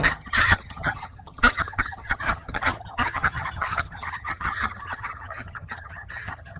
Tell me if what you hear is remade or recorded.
remade